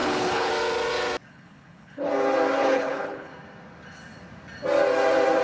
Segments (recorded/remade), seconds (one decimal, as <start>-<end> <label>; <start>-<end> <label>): 0.0-0.5 remade; 0.5-1.3 recorded; 1.3-2.1 remade; 2.1-2.6 recorded; 2.6-3.3 remade; 3.3-5.4 recorded